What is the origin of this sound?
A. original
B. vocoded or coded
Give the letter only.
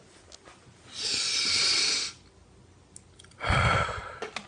A